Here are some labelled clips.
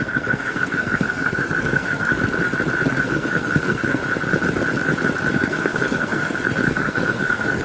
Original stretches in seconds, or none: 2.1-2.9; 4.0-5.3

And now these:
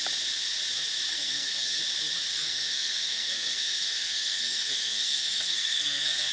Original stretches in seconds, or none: 0.0-1.1; 1.8-2.3

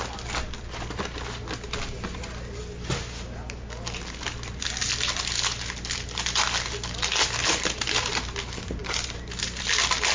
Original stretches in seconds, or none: 0.0-10.1

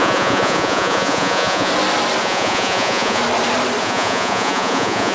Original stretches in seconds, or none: 1.7-2.2; 3.2-3.8